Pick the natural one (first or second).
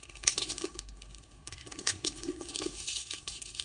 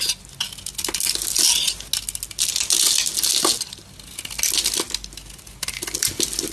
second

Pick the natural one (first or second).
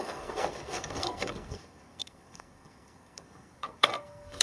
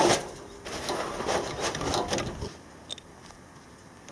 second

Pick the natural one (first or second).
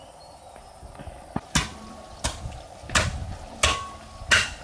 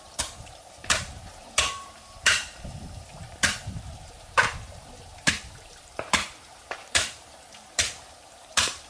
first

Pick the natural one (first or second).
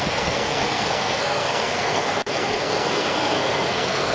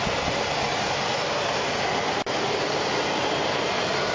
second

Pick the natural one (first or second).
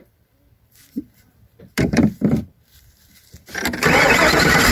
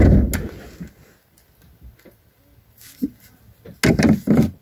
second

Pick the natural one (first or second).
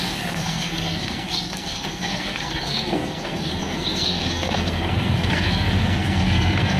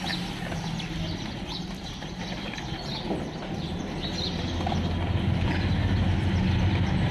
second